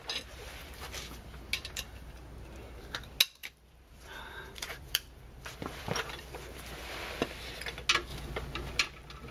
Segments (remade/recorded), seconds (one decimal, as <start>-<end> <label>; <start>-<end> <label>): 0.0-3.4 recorded; 3.4-6.3 remade; 6.3-9.3 recorded